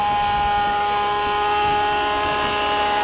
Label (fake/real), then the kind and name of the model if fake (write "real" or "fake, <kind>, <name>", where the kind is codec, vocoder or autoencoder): real